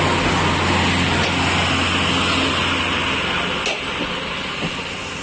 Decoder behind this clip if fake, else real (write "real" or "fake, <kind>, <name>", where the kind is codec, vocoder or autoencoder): real